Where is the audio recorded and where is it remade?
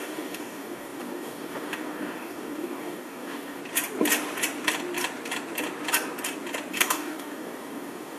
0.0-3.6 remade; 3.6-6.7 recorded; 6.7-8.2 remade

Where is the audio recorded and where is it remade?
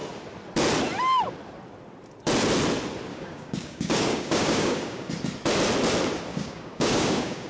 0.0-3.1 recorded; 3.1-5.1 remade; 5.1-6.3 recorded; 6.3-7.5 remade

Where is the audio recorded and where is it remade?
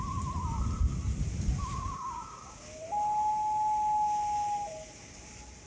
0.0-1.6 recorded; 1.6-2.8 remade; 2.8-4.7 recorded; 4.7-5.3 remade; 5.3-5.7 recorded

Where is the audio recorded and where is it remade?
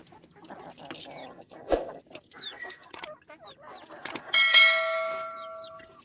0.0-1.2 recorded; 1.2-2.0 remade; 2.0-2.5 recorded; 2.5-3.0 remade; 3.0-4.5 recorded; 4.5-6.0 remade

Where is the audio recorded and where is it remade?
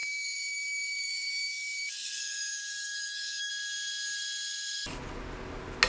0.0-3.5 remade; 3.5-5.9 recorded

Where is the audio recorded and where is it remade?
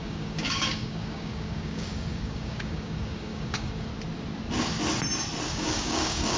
0.0-3.9 remade; 3.9-5.5 recorded; 5.5-6.4 remade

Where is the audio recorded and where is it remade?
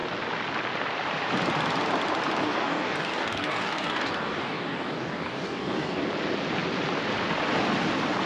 0.0-2.4 recorded; 2.4-6.0 remade; 6.0-8.3 recorded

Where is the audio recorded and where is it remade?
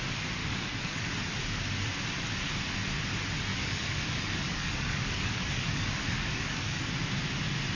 0.0-0.4 recorded; 0.4-1.1 remade; 1.1-3.5 recorded; 3.5-6.9 remade; 6.9-7.8 recorded